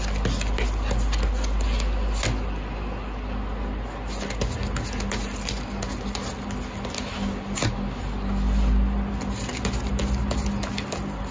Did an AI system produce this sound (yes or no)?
no